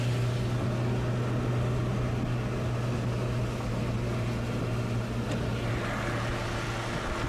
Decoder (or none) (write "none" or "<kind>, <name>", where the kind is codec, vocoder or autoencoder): none